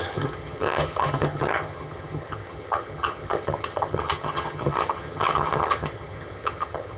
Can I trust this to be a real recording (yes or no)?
no